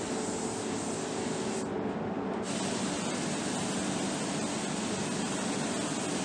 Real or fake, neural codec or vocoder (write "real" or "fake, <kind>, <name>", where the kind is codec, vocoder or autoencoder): real